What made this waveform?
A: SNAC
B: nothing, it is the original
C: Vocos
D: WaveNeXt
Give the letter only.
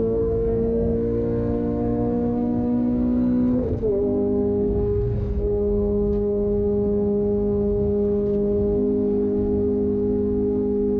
A